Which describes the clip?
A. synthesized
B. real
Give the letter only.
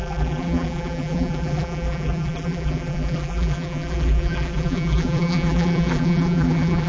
A